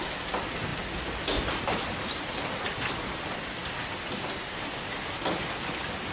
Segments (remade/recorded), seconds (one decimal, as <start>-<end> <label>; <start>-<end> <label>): 0.0-6.1 recorded